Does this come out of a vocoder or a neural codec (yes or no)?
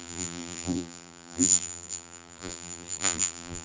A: yes